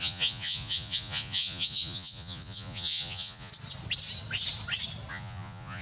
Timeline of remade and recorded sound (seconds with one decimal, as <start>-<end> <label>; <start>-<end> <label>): 0.0-3.5 remade; 3.5-5.1 recorded; 5.1-5.8 remade